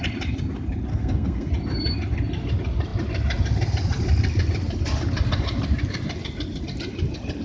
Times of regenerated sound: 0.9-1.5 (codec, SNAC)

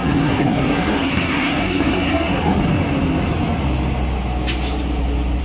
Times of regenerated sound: 0.0-2.6 (codec, SNAC)

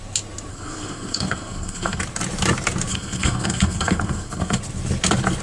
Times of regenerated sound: 0.5-2.0 (codec, SNAC); 2.9-4.6